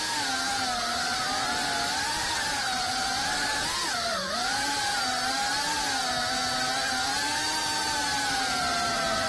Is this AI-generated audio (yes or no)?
no